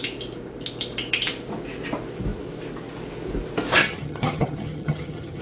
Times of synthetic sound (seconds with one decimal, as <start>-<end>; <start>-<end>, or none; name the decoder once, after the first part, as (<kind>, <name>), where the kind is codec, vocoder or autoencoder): 3.8-5.4 (vocoder, HiFi-GAN)